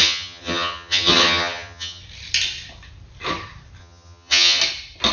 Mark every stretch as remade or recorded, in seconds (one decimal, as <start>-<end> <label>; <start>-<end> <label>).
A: 0.0-2.0 remade; 2.0-3.8 recorded; 3.8-4.6 remade; 4.6-5.1 recorded